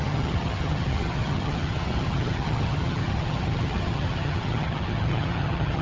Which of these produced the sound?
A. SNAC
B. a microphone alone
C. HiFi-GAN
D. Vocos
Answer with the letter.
C